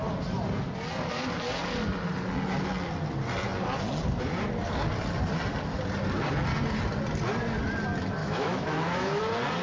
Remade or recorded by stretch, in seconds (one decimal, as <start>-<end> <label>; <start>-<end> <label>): 0.0-8.2 recorded; 8.2-9.2 remade; 9.2-9.6 recorded